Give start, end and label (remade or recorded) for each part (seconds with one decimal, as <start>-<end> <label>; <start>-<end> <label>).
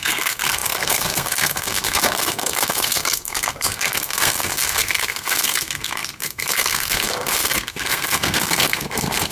0.0-9.3 remade